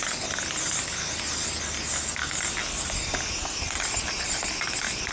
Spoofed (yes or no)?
no